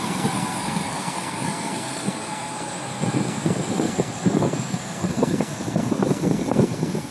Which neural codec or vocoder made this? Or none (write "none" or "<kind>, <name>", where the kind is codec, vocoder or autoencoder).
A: codec, SNAC